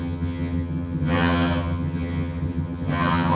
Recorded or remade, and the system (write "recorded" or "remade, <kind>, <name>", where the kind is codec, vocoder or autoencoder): remade, vocoder, HiFi-GAN